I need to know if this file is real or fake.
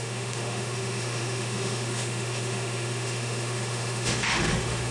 fake